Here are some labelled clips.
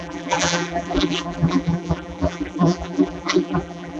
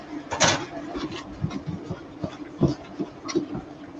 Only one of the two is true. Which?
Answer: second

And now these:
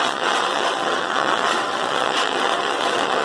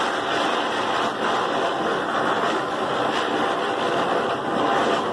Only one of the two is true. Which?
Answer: second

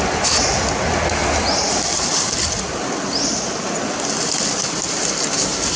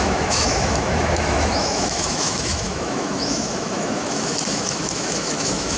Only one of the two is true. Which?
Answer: first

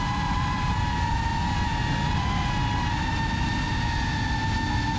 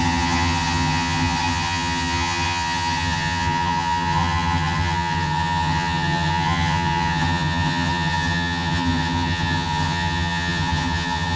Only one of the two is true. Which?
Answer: first